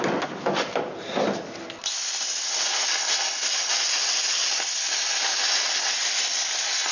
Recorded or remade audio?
recorded